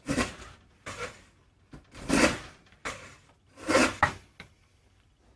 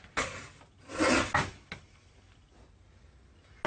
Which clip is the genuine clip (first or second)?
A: second